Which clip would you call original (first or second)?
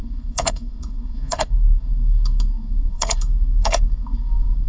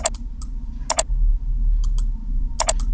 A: second